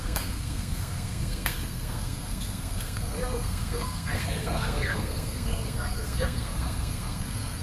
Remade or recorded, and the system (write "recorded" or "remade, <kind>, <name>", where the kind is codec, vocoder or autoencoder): remade, codec, SNAC